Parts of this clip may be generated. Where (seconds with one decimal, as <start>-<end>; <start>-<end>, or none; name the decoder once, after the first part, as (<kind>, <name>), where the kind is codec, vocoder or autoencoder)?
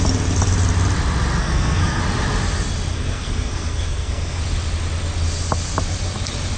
1.4-2.0 (codec, SNAC); 2.9-4.4